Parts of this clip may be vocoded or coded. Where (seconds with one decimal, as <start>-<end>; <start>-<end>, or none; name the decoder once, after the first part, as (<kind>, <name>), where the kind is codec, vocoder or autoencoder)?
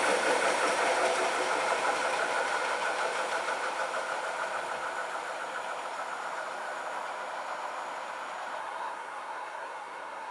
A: 8.6-10.3 (codec, SNAC)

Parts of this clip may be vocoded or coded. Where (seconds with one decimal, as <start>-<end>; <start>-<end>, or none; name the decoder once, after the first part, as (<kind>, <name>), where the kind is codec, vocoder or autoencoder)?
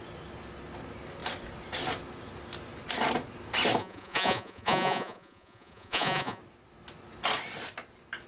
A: 3.8-6.4 (vocoder, Vocos)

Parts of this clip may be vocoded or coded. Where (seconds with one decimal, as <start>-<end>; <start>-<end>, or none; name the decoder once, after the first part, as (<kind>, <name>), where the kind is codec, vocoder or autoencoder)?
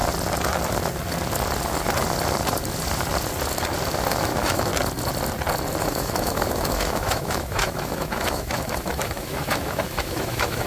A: 4.1-4.7 (autoencoder, DAC-VAE); 5.8-10.7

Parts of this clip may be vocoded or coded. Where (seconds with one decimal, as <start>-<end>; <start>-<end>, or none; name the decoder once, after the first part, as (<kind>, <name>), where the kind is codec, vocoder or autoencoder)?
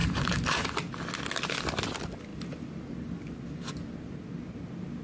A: 0.0-0.7 (vocoder, BigVGAN v2)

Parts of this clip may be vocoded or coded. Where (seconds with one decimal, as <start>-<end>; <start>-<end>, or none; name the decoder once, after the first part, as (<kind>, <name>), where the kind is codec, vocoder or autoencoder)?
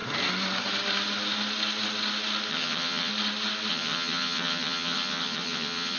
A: 2.5-3.1 (vocoder, HiFi-GAN); 3.7-6.0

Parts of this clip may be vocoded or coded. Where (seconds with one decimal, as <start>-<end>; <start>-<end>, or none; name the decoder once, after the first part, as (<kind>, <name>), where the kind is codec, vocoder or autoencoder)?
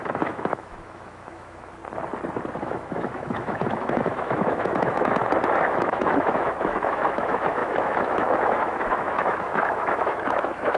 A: 0.0-1.8 (autoencoder, DAC-VAE); 2.6-5.2; 5.7-10.8